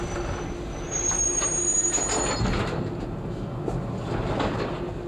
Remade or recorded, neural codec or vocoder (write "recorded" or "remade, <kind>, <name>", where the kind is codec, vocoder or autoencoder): recorded